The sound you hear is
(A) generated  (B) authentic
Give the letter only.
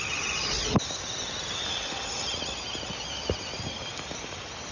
B